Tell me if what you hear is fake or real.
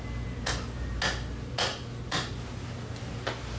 real